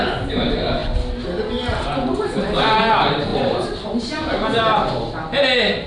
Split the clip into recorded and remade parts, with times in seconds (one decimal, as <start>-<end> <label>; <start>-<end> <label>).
0.0-5.9 recorded